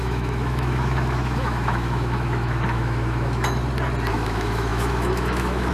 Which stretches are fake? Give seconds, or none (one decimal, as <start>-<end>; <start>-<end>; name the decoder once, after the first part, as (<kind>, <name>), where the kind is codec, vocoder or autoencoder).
0.0-3.6 (autoencoder, DAC-VAE); 4.1-5.7